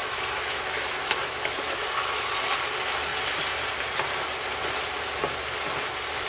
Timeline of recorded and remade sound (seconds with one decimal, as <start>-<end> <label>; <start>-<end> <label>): 0.0-2.3 remade; 2.3-6.3 recorded